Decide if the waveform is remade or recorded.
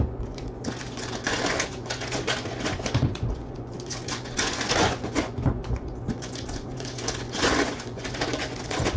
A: remade